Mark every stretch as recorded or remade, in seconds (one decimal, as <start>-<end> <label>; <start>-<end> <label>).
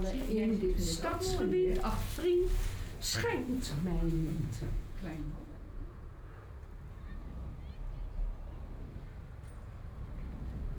0.0-4.1 recorded; 4.1-6.5 remade; 6.5-10.8 recorded